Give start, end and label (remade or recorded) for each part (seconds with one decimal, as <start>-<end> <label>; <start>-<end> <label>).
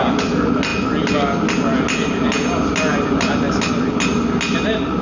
0.0-5.0 recorded